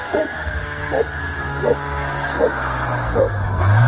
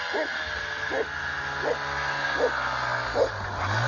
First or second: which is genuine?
second